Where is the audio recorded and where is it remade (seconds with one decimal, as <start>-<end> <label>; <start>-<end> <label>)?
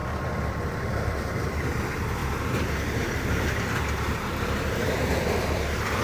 0.0-1.5 remade; 1.5-2.2 recorded; 2.2-5.1 remade; 5.1-6.0 recorded